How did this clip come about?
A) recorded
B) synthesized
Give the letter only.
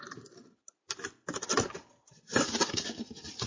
B